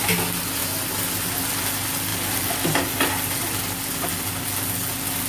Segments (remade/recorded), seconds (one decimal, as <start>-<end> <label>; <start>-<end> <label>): 0.0-5.3 recorded